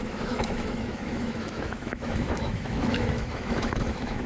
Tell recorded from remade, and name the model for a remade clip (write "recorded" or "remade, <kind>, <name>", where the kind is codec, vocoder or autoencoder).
remade, autoencoder, DAC-VAE